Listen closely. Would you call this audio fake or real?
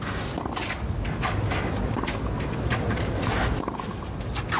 real